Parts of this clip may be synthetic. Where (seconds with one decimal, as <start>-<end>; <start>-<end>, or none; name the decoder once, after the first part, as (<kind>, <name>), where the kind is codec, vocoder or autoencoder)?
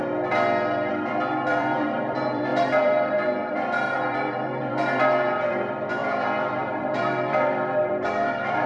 0.9-8.7 (vocoder, BigVGAN v2)